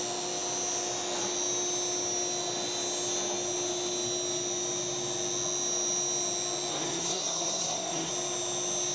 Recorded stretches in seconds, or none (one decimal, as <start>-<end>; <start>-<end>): 0.0-6.7; 8.1-8.9

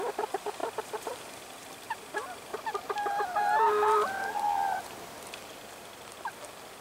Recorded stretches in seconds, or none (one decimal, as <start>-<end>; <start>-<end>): 2.5-6.8